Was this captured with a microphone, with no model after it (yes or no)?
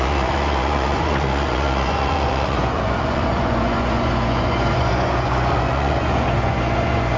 no